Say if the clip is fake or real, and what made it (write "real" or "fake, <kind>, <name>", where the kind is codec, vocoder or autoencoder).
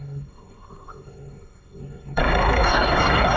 fake, codec, SNAC